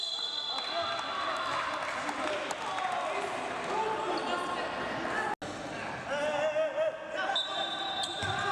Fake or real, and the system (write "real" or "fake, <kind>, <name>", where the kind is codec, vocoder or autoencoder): real